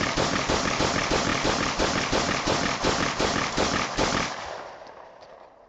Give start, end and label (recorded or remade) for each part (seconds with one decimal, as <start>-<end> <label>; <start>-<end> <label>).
0.0-5.7 recorded